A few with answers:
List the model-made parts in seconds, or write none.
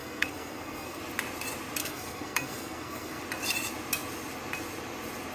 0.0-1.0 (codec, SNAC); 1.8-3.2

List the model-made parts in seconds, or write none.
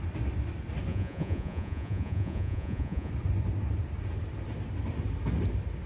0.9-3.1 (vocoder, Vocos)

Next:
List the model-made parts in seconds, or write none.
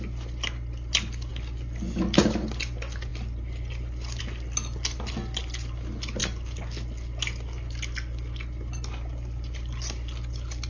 none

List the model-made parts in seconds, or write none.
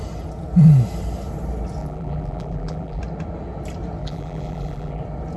1.8-3.0 (vocoder, BigVGAN v2); 4.0-5.0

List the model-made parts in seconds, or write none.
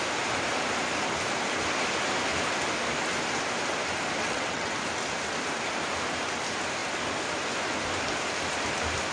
4.2-4.7 (vocoder, WaveNeXt)